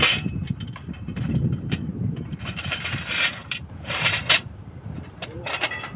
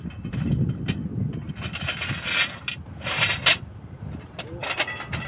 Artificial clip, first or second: first